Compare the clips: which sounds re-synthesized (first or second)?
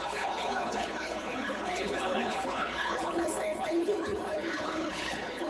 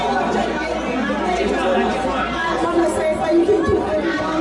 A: first